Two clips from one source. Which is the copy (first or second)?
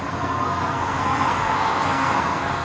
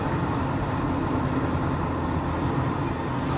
first